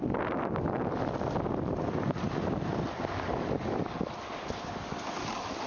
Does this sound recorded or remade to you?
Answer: recorded